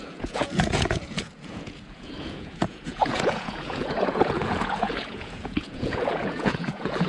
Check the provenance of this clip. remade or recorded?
remade